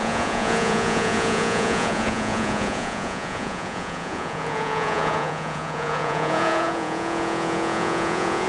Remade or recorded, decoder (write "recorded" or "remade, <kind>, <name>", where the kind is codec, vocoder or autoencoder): remade, vocoder, Vocos